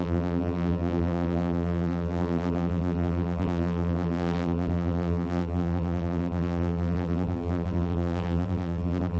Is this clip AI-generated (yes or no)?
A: yes